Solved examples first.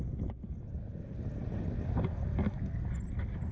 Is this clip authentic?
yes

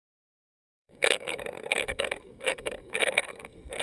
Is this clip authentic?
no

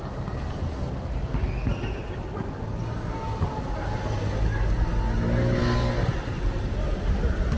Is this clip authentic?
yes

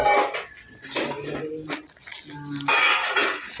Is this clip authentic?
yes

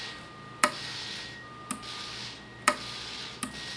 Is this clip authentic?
yes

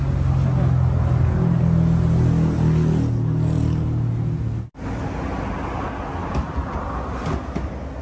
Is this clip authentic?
yes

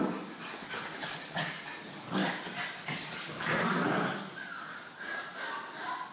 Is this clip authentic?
yes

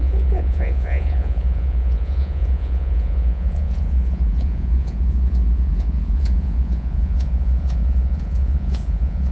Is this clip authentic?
no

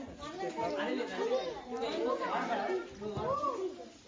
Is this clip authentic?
yes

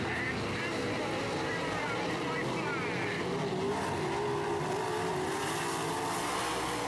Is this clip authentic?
yes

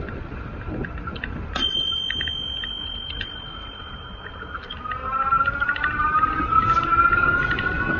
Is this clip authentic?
yes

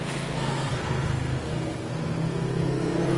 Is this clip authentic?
no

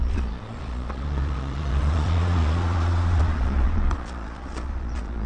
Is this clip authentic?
no